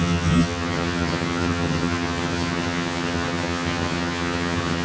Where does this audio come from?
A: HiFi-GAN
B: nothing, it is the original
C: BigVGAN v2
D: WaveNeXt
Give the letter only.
A